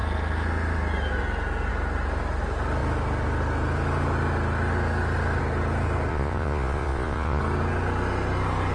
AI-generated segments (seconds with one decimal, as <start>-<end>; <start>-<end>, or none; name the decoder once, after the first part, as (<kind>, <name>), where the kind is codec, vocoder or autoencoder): 6.1-7.4 (vocoder, Vocos)

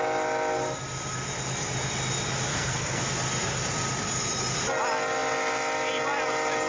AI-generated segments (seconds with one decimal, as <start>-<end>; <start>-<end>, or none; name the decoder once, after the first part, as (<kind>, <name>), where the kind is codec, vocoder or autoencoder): 2.5-3.0 (codec, SNAC)

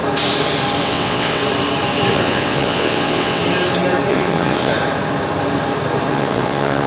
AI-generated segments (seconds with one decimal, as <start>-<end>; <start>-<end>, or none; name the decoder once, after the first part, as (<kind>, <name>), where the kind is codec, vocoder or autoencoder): 0.8-1.4 (vocoder, WaveNeXt); 2.1-3.4; 4.1-4.7; 6.1-6.9

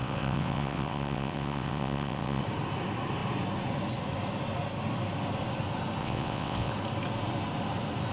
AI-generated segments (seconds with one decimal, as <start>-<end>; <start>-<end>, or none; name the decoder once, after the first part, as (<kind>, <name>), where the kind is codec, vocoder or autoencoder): 0.0-2.4 (vocoder, WaveNeXt); 6.0-6.7

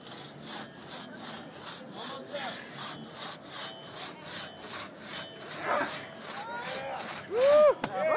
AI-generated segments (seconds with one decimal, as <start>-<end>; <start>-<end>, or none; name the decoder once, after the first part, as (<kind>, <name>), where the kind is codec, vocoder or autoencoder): none